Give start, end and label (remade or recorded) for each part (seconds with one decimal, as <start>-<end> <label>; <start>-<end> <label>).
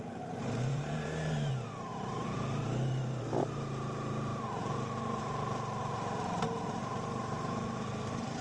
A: 0.0-0.7 recorded; 0.7-1.5 remade; 1.5-1.9 recorded; 1.9-3.2 remade; 3.2-8.4 recorded